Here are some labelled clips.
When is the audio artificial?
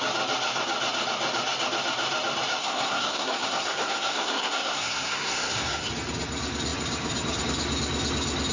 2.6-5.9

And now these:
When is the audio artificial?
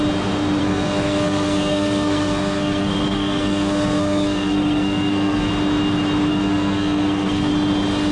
0.6-5.5; 6.3-7.5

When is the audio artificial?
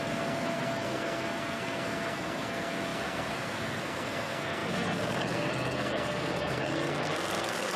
0.0-7.8